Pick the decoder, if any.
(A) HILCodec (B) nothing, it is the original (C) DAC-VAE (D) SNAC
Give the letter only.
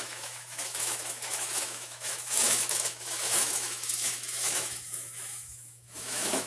C